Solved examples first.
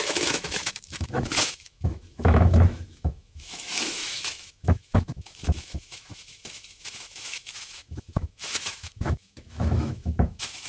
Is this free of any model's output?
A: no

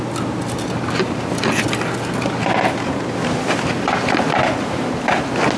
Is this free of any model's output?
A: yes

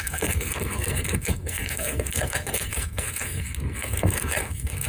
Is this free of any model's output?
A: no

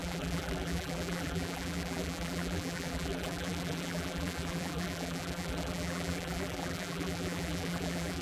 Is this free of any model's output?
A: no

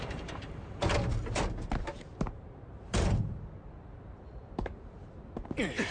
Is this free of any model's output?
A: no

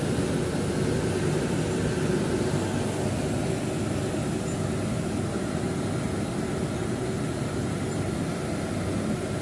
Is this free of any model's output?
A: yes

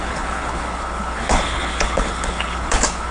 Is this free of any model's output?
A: no